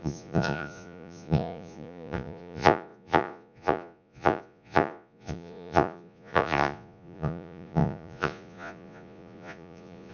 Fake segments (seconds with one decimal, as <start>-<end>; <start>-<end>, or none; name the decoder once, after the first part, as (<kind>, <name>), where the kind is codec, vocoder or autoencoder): 0.0-10.1 (vocoder, Vocos)